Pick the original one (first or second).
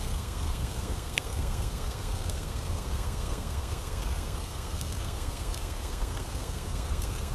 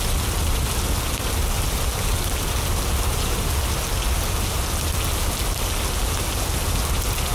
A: second